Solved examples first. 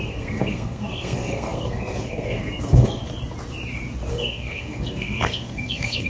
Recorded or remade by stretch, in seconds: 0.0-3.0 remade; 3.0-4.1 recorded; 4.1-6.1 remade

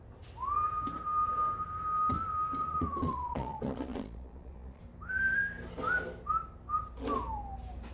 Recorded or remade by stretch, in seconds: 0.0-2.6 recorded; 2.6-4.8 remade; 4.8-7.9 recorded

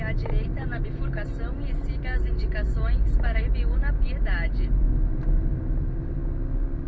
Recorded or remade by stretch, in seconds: 0.0-6.9 recorded

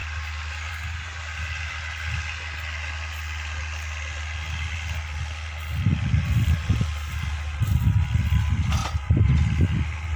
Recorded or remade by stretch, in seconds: 0.0-0.7 remade; 0.7-5.9 recorded; 5.9-7.2 remade; 7.2-8.8 recorded; 8.8-9.4 remade; 9.4-10.2 recorded